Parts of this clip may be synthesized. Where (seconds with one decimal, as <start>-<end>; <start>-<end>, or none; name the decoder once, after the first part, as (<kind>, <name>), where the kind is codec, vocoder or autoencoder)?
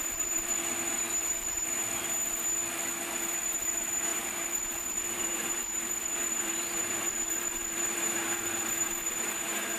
0.0-0.5 (vocoder, BigVGAN v2); 1.2-1.8; 3.6-9.8